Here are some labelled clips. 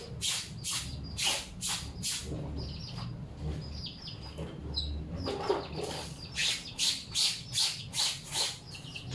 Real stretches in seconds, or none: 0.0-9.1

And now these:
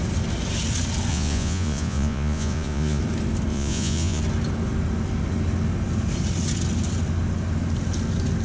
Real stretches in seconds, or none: 0.0-1.1; 3.0-3.5; 4.2-8.4

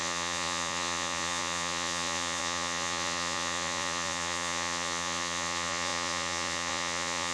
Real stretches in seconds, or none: none

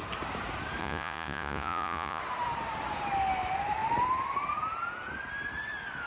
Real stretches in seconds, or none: 0.0-0.8; 2.2-6.1

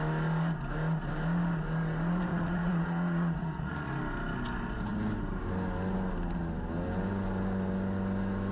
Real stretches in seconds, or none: 0.0-2.3; 3.9-8.5

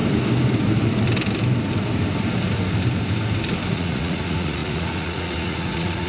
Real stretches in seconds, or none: 0.0-3.7